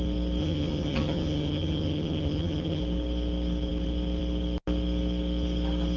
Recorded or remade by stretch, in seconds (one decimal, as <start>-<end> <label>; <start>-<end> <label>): 0.0-0.4 recorded; 0.4-2.8 remade; 2.8-6.0 recorded